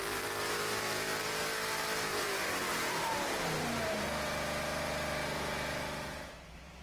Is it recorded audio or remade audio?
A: remade